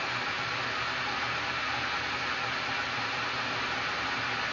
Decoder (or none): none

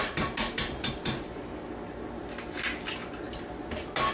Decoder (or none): none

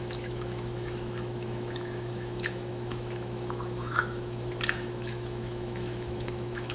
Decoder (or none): autoencoder, DAC-VAE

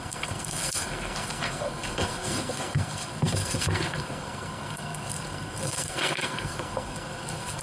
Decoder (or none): codec, SNAC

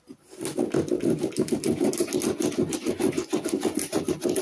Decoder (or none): none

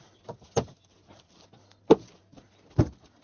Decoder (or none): none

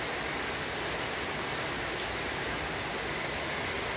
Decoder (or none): none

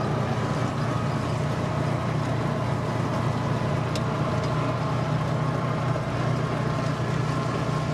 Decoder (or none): none